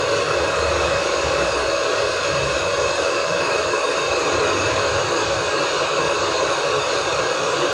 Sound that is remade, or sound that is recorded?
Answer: remade